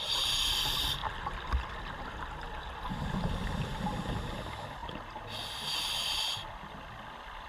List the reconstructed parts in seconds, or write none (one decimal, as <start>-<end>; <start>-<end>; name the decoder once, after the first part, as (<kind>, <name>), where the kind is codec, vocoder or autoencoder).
none